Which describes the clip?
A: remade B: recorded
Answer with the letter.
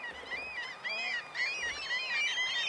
B